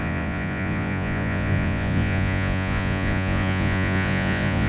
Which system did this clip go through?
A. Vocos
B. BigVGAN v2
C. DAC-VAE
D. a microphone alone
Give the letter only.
A